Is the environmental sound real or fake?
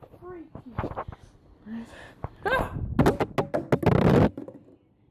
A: real